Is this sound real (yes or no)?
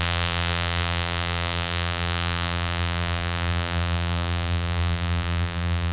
no